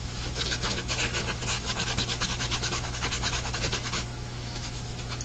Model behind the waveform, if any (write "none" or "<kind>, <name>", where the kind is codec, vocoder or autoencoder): autoencoder, DAC-VAE